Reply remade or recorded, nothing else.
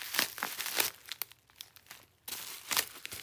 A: recorded